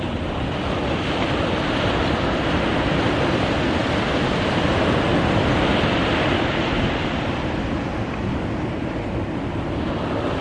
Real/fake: real